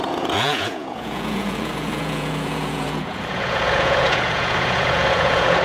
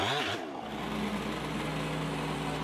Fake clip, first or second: first